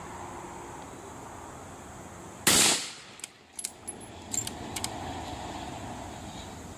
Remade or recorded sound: recorded